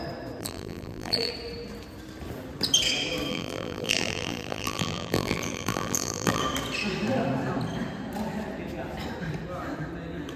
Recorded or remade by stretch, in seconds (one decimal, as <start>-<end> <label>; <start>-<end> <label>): 0.0-0.4 recorded; 0.4-1.3 remade; 1.3-3.3 recorded; 3.3-6.4 remade; 6.4-10.4 recorded